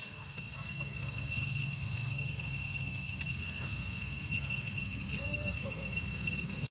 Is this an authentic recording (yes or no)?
no